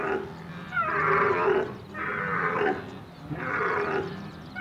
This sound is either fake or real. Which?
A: real